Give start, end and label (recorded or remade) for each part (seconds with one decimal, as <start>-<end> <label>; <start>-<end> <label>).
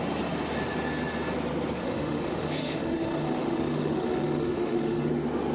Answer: 0.0-1.8 recorded; 1.8-5.1 remade; 5.1-5.5 recorded